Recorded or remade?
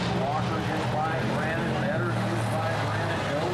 recorded